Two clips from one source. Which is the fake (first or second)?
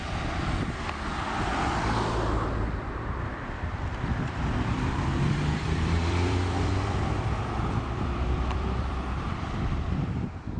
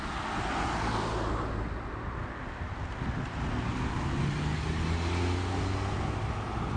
first